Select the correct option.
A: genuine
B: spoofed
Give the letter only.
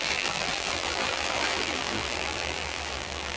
B